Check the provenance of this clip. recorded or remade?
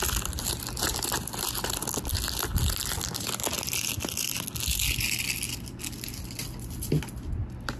recorded